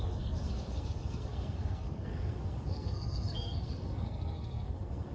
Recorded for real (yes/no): no